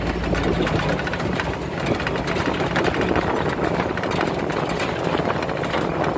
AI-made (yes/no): no